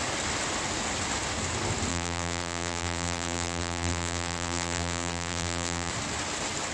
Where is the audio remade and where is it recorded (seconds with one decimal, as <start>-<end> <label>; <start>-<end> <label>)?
0.0-1.9 recorded; 1.9-5.9 remade; 5.9-6.7 recorded